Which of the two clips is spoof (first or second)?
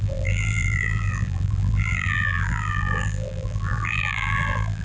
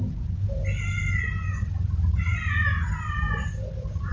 first